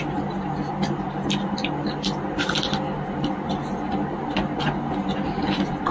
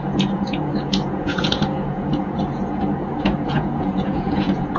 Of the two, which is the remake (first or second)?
second